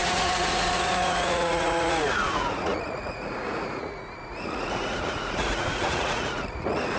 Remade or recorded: remade